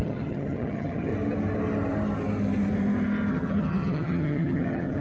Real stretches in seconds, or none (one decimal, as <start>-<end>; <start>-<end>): 1.1-3.3